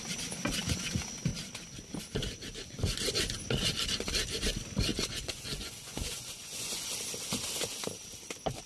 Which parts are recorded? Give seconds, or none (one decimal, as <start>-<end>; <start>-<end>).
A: 0.0-4.9; 6.9-8.7